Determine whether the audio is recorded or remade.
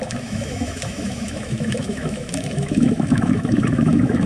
remade